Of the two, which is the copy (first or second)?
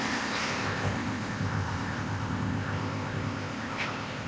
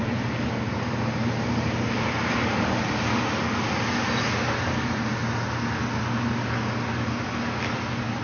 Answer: first